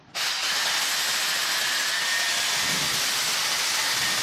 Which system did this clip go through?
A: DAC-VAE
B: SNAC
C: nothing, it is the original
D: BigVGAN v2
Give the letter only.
C